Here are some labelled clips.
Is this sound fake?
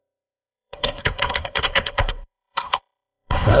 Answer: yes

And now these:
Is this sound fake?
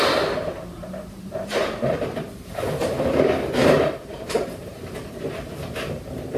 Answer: yes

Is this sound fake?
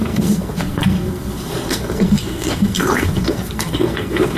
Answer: yes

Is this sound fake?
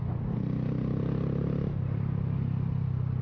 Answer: no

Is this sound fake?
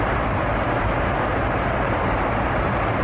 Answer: yes